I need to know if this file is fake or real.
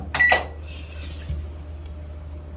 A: real